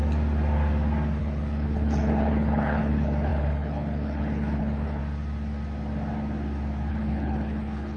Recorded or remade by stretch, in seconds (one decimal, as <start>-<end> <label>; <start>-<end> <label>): 0.0-1.2 recorded; 1.2-5.0 remade; 5.0-6.9 recorded; 6.9-8.0 remade